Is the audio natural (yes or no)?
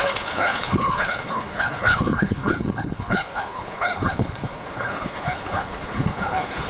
no